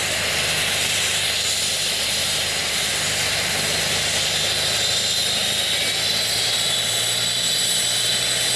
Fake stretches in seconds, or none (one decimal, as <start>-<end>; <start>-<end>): none